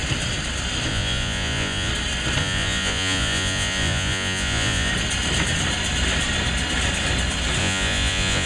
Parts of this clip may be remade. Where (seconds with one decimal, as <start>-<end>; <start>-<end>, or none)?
0.9-1.9; 2.4-4.9; 7.6-8.5